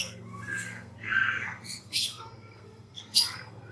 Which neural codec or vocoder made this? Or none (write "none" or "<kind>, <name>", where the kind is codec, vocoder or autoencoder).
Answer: codec, SNAC